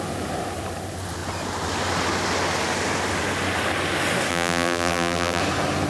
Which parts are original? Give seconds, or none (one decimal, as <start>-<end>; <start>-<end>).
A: 0.0-4.3; 5.4-5.9

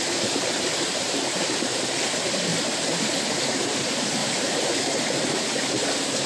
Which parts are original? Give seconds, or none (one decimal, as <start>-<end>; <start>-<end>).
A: 0.0-0.9; 1.5-2.5; 3.0-4.2; 4.8-6.3